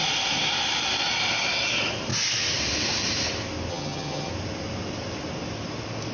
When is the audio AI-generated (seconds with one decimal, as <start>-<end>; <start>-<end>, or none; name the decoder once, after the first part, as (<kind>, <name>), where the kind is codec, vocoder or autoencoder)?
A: 3.7-4.3 (vocoder, HiFi-GAN)